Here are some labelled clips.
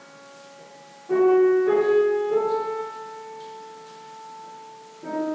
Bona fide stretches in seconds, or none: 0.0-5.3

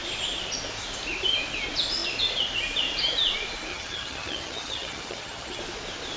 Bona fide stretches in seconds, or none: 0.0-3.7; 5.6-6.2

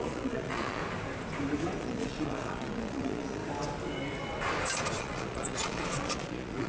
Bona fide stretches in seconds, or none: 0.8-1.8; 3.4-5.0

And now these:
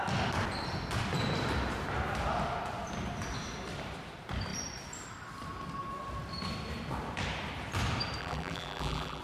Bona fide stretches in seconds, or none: 0.0-8.2